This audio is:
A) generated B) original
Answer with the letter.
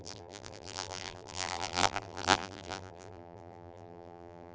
A